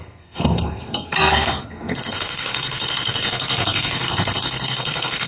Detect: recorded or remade remade